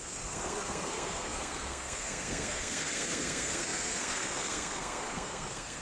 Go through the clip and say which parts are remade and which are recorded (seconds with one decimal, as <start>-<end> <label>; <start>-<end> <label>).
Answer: 0.0-5.8 remade